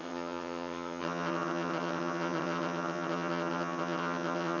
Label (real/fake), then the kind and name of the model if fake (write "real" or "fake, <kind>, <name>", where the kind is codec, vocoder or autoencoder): fake, vocoder, HiFi-GAN